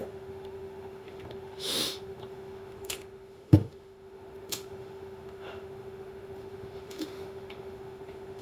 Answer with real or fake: fake